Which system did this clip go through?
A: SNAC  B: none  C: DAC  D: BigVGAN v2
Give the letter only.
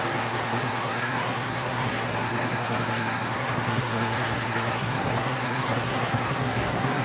A